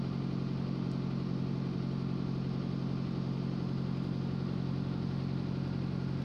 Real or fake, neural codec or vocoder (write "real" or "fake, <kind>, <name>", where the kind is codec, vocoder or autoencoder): real